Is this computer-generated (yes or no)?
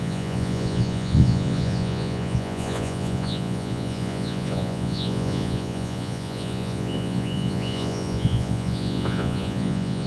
yes